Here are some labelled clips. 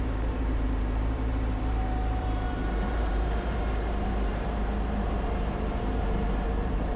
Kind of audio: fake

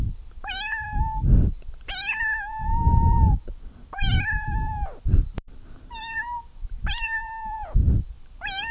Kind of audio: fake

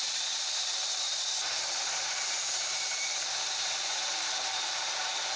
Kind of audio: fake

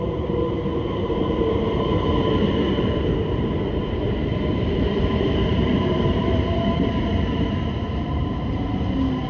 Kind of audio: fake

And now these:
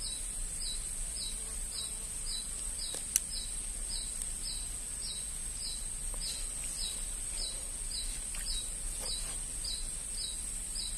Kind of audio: real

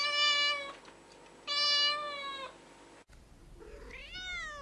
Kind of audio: real